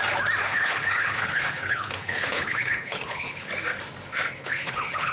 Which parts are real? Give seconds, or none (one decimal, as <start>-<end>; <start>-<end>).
0.0-0.4; 3.5-4.4